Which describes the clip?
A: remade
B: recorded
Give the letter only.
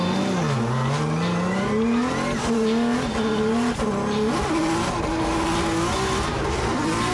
B